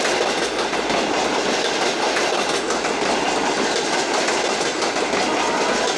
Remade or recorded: recorded